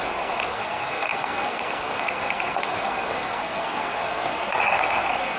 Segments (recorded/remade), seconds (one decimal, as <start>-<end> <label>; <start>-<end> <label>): 0.0-5.4 remade